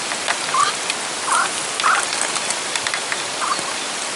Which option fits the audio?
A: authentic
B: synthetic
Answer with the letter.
A